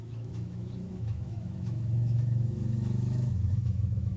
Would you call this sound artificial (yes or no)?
yes